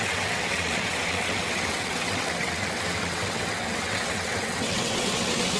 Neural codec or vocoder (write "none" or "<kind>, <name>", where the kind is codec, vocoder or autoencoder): vocoder, WaveNeXt